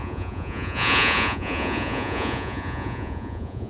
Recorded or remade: remade